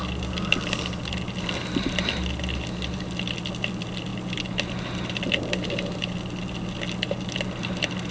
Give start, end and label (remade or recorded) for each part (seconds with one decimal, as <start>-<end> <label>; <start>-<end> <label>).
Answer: 0.0-8.1 recorded

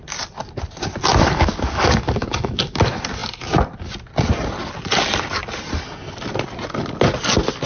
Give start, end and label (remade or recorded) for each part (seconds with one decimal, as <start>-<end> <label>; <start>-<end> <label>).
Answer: 0.0-1.2 recorded; 1.2-2.8 remade; 2.8-7.7 recorded

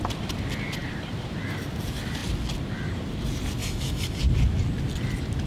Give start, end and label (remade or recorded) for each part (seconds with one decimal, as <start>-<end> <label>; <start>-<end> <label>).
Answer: 0.0-3.6 recorded; 3.6-4.2 remade; 4.2-5.5 recorded

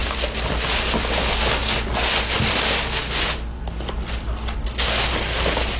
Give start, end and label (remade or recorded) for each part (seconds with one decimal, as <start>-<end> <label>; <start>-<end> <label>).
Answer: 0.0-5.8 recorded

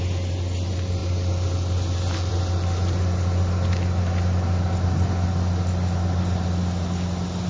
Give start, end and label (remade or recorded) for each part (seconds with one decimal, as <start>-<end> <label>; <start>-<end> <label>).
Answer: 0.0-7.5 recorded

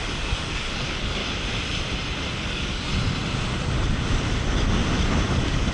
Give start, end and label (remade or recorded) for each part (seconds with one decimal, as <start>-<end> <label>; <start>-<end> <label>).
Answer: 0.0-1.2 remade; 1.2-2.3 recorded; 2.3-2.9 remade; 2.9-5.3 recorded; 5.3-5.7 remade

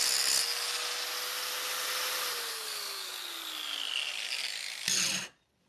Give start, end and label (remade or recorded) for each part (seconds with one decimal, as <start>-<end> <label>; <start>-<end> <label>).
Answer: 0.0-2.5 recorded; 2.5-3.2 remade; 3.2-5.7 recorded

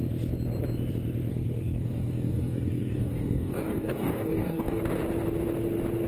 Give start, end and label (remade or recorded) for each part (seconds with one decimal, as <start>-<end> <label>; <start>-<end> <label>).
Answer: 0.0-1.3 recorded; 1.3-4.8 remade; 4.8-6.1 recorded